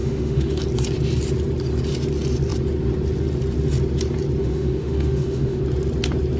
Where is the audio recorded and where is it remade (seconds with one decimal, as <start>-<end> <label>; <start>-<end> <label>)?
0.0-0.6 remade; 0.6-4.4 recorded; 4.4-5.6 remade; 5.6-6.4 recorded